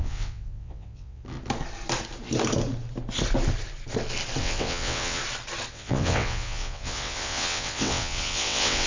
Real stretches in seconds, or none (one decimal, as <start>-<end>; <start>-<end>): 1.2-4.4; 5.2-5.7